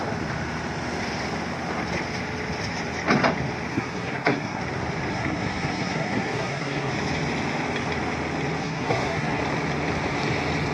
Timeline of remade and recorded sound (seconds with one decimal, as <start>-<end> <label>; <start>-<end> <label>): 0.0-3.7 recorded; 3.7-4.6 remade; 4.6-5.1 recorded; 5.1-6.9 remade; 6.9-8.6 recorded; 8.6-9.4 remade; 9.4-10.7 recorded

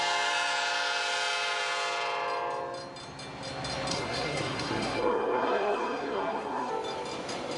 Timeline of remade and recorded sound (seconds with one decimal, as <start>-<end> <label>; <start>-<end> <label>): 0.0-3.9 recorded; 3.9-6.7 remade; 6.7-7.6 recorded